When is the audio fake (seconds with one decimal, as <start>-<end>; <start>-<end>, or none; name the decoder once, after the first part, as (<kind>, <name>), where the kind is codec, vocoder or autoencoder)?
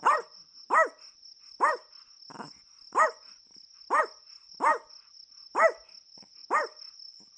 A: none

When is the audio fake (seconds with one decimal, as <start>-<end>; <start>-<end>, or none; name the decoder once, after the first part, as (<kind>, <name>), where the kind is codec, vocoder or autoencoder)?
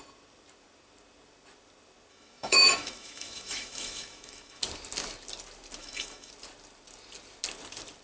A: 2.1-4.6 (autoencoder, DAC-VAE); 5.8-6.3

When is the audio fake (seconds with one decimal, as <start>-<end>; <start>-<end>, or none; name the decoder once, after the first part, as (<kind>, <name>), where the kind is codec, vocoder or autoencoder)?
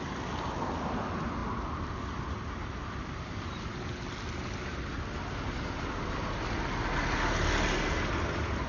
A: none